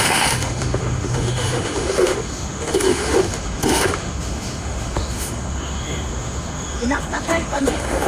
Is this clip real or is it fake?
fake